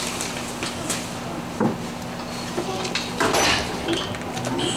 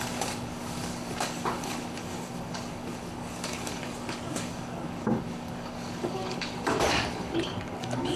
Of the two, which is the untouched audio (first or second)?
first